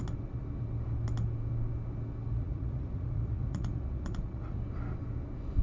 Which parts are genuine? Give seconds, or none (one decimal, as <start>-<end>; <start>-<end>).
0.0-2.3; 4.6-5.6